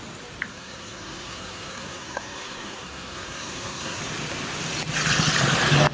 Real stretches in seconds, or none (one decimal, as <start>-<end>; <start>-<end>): 0.0-0.5; 4.0-5.9